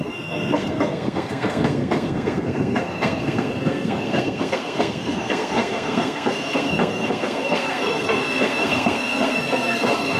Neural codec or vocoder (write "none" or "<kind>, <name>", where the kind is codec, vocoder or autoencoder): codec, SNAC